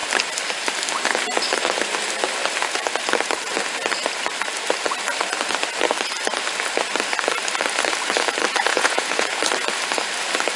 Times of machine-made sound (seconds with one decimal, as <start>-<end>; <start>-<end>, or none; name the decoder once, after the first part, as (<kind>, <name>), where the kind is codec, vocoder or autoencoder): 8.7-9.4 (vocoder, Vocos)